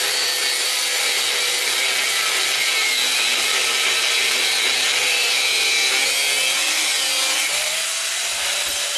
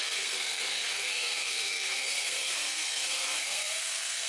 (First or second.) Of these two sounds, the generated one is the second